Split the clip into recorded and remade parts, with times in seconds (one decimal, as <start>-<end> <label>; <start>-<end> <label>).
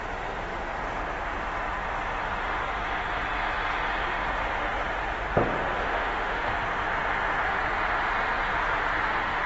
0.0-5.9 recorded; 5.9-6.5 remade; 6.5-9.5 recorded